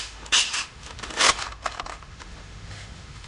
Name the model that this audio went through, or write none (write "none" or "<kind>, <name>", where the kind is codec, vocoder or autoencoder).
autoencoder, DAC-VAE